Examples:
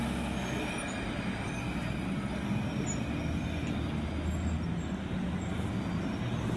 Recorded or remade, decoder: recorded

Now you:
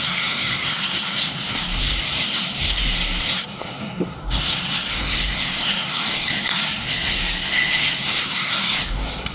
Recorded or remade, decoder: remade, codec, SNAC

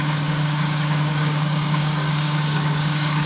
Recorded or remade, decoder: remade, codec, DAC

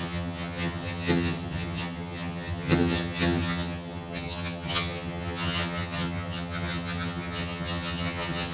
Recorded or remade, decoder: remade, vocoder, HiFi-GAN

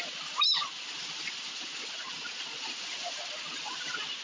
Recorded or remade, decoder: recorded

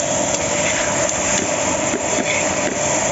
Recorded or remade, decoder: recorded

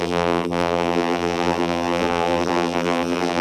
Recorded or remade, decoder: remade, vocoder, BigVGAN v2